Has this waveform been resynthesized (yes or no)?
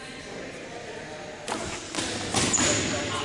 no